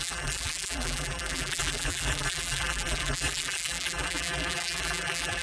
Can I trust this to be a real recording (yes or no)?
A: no